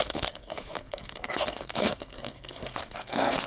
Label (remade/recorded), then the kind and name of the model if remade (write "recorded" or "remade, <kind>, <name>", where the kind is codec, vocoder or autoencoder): remade, codec, SNAC